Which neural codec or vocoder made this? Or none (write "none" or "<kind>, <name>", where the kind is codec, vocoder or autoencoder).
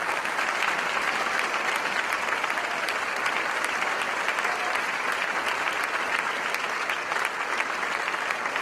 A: none